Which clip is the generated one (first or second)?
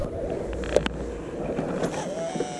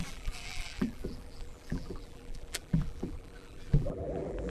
second